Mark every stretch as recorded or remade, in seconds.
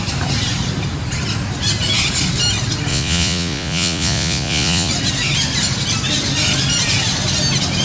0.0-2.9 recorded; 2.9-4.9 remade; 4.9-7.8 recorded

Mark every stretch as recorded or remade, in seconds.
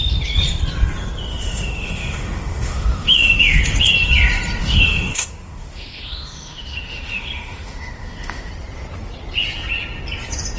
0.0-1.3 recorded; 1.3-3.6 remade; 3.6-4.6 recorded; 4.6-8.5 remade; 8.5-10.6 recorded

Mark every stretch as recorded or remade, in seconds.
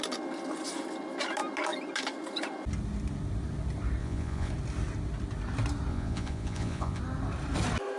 0.0-4.0 recorded; 4.0-4.5 remade; 4.5-5.9 recorded; 5.9-7.0 remade; 7.0-8.0 recorded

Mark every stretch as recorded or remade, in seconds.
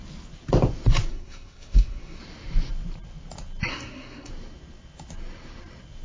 0.0-1.1 recorded; 1.1-2.2 remade; 2.2-3.7 recorded; 3.7-4.3 remade; 4.3-6.0 recorded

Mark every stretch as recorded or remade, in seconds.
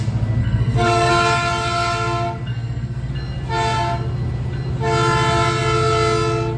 0.0-0.4 recorded; 0.4-1.1 remade; 1.1-2.5 recorded; 2.5-3.1 remade; 3.1-6.6 recorded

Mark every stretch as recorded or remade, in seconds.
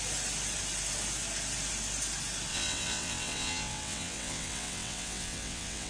0.0-2.5 recorded; 2.5-5.9 remade